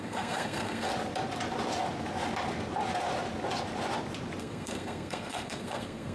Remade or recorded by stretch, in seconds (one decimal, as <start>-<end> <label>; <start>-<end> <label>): 0.0-0.9 remade; 0.9-4.4 recorded; 4.4-6.1 remade